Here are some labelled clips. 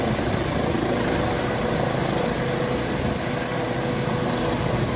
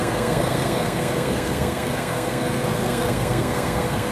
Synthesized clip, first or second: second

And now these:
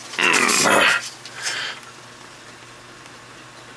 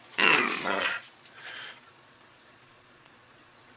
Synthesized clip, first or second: second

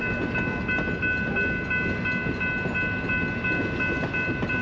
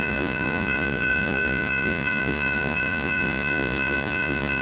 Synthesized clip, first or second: second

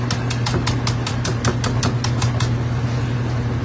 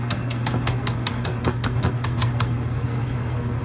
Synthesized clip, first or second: second